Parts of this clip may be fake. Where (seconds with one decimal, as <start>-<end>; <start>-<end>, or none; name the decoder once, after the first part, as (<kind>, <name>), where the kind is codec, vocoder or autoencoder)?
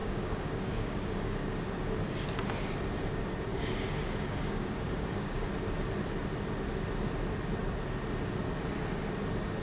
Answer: 0.0-1.6 (codec, DAC); 3.5-5.5